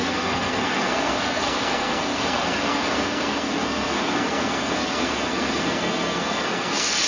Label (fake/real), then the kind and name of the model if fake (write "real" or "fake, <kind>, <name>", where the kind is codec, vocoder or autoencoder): fake, codec, SNAC